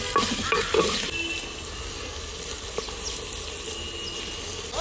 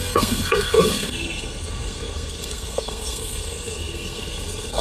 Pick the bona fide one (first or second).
first